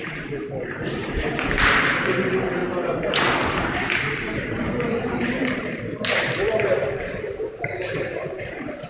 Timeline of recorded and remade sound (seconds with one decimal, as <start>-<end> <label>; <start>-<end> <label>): 0.0-2.6 remade; 2.6-3.5 recorded; 3.5-8.9 remade